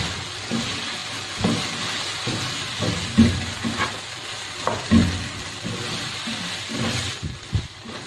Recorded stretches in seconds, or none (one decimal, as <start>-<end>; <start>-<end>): 0.0-8.1